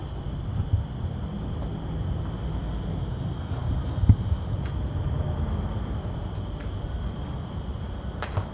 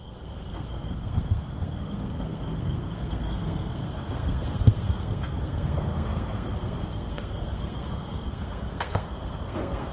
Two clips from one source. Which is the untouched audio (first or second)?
first